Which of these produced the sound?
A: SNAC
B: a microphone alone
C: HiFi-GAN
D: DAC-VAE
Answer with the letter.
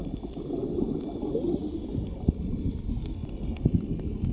B